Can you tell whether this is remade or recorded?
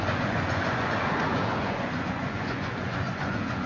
remade